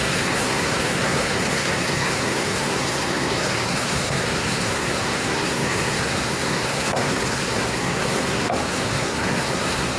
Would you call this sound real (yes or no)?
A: no